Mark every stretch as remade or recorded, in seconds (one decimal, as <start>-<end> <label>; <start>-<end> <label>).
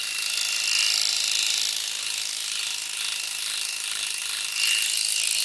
0.0-5.4 recorded